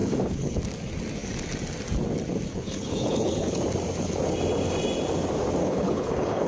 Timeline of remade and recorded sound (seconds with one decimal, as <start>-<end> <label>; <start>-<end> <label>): 0.0-0.6 remade; 0.6-2.5 recorded; 2.5-3.6 remade; 3.6-5.6 recorded; 5.6-6.5 remade